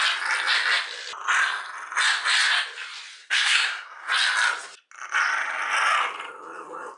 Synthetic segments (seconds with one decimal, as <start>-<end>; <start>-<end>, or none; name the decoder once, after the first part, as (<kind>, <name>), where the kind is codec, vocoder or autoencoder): 3.2-4.1 (codec, SNAC)